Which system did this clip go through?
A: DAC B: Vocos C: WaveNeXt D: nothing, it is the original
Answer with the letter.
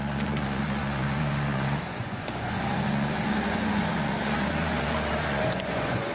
B